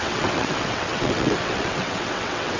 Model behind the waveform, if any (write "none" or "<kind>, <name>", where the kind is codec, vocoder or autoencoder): vocoder, WaveNeXt